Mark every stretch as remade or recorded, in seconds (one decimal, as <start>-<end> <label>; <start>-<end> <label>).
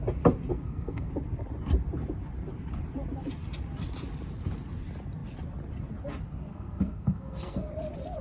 0.0-0.5 recorded; 0.5-1.1 remade; 1.1-6.5 recorded; 6.5-7.7 remade; 7.7-8.2 recorded